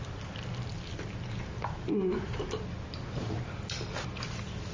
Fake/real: real